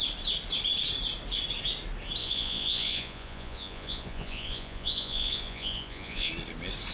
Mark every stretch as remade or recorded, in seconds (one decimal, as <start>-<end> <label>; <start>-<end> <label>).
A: 0.0-2.2 recorded; 2.2-6.3 remade; 6.3-6.9 recorded